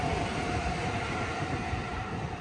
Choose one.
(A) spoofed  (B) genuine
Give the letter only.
B